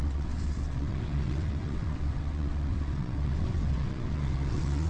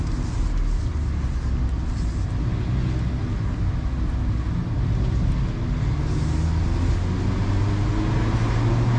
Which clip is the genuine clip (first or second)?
second